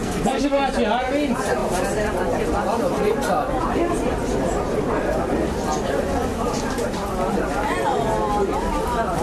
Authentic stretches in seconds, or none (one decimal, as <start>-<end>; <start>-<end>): 0.6-9.2